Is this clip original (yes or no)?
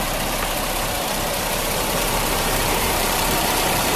no